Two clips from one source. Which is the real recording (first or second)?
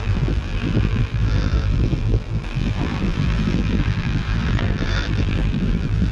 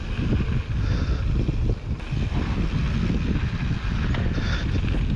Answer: second